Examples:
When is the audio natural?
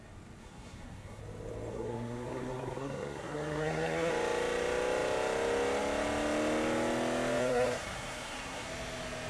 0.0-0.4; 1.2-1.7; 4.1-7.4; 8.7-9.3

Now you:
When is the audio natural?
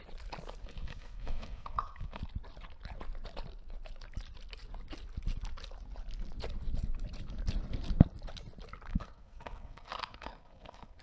0.0-0.6; 2.2-8.9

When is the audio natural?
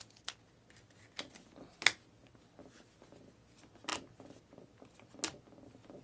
0.0-6.0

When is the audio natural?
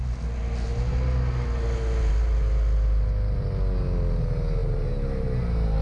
0.0-5.8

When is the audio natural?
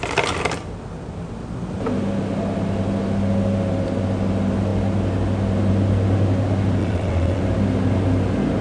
0.0-6.8; 7.4-8.6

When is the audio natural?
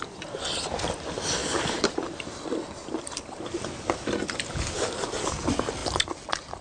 0.0-6.6